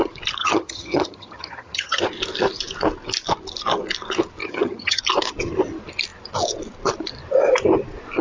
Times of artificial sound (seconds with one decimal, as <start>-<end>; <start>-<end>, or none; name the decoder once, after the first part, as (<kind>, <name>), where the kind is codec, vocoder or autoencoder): 0.4-2.0 (vocoder, HiFi-GAN); 4.4-5.0